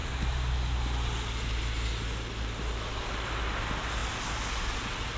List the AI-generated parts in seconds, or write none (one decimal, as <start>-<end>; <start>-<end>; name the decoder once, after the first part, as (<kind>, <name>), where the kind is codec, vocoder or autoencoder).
none